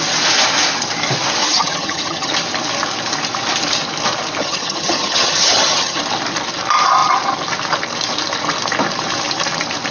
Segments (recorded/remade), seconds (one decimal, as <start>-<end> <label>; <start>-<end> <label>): 0.0-1.4 recorded; 1.4-2.3 remade; 2.3-4.4 recorded; 4.4-6.0 remade; 6.0-9.9 recorded

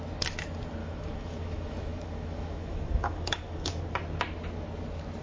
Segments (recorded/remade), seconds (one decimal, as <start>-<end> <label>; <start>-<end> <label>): 0.0-0.8 recorded; 0.8-3.8 remade; 3.8-5.2 recorded

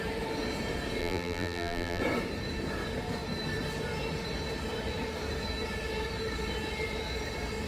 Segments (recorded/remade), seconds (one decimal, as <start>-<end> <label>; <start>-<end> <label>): 0.0-1.0 recorded; 1.0-2.0 remade; 2.0-7.7 recorded

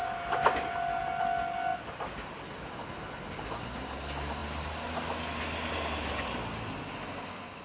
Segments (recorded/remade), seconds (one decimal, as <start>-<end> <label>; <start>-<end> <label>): 0.0-7.6 recorded

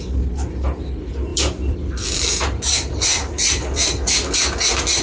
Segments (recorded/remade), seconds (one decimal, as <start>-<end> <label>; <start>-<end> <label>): 0.0-1.3 recorded; 1.3-4.3 remade; 4.3-5.0 recorded

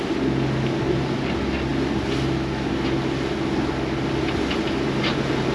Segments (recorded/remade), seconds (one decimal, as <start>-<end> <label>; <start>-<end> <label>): 0.0-5.5 recorded